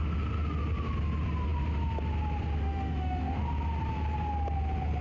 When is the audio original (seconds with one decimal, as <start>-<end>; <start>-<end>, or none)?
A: 0.0-2.6; 3.4-5.0